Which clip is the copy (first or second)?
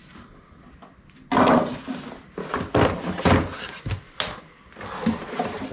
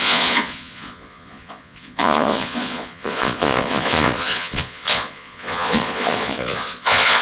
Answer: second